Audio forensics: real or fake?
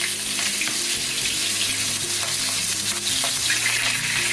real